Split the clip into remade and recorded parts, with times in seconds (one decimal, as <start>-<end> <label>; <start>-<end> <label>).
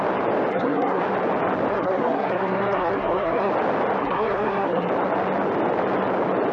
0.0-0.5 recorded; 0.5-1.0 remade; 1.0-1.7 recorded; 1.7-3.5 remade; 3.5-4.0 recorded; 4.0-4.9 remade; 4.9-6.5 recorded